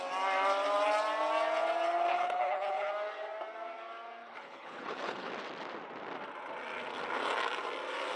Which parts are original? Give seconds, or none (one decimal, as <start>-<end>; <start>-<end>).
0.0-2.1; 2.9-4.2; 5.3-8.2